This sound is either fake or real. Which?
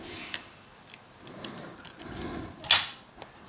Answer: real